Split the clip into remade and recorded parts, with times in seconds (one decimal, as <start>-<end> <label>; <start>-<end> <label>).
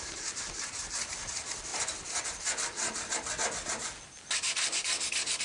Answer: 0.0-1.7 remade; 1.7-3.1 recorded; 3.1-5.4 remade